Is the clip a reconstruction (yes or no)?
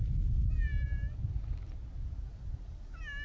no